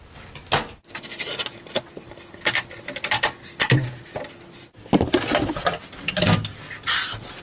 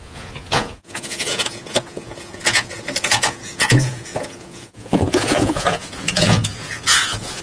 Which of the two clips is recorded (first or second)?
first